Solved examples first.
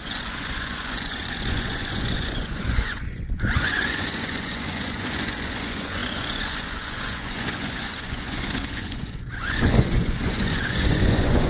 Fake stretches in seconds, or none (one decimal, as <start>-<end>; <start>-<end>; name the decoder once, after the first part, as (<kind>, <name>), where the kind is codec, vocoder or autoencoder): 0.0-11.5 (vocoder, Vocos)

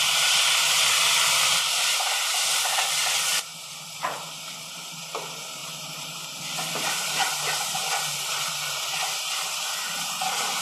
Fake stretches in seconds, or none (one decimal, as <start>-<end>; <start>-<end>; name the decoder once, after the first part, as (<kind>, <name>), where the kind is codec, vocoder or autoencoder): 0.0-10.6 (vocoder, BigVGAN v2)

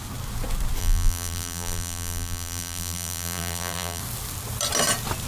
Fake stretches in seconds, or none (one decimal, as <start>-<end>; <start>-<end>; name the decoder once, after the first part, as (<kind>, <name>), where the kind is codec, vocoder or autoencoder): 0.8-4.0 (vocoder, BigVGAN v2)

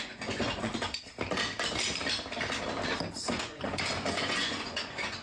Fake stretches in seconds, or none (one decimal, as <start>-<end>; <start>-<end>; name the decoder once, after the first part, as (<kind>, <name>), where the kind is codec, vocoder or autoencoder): 0.0-0.7 (vocoder, Vocos); 3.2-5.2

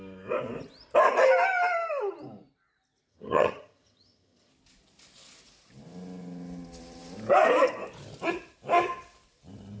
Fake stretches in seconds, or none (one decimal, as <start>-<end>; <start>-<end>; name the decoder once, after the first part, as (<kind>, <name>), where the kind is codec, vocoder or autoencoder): 3.1-4.5 (vocoder, HiFi-GAN)

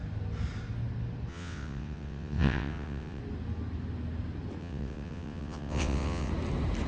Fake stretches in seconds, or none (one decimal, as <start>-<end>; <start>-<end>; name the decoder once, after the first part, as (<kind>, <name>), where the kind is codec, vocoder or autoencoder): 1.3-3.2 (vocoder, WaveNeXt); 4.6-6.3

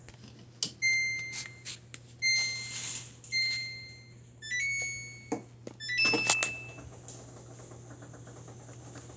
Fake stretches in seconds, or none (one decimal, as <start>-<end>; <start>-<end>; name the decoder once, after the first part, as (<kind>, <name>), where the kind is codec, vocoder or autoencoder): none

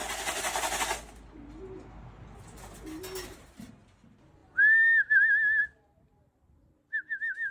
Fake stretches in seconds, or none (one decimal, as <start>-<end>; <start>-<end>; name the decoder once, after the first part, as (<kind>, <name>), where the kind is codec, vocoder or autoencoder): none